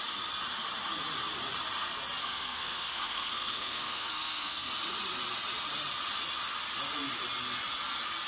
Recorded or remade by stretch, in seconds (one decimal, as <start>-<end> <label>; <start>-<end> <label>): 0.0-2.2 recorded; 2.2-4.7 remade; 4.7-8.3 recorded